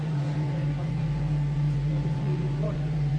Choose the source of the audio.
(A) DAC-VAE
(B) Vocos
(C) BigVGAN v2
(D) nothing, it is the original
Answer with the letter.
B